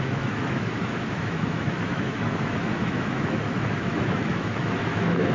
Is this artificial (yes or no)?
yes